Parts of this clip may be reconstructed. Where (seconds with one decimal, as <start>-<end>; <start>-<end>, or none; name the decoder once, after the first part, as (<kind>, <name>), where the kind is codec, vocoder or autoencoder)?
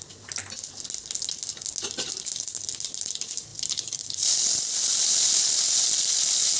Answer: 3.5-5.4 (vocoder, BigVGAN v2)